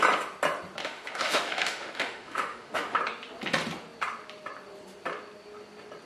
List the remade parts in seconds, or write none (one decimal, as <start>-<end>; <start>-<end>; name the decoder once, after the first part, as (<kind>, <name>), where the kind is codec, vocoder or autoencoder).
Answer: 0.8-3.0 (autoencoder, DAC-VAE)